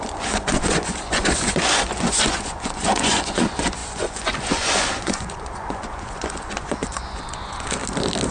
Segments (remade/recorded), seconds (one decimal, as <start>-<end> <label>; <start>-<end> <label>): 0.0-7.8 remade; 7.8-8.3 recorded